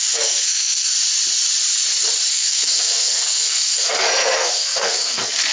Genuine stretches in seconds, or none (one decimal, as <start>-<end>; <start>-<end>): 0.9-2.3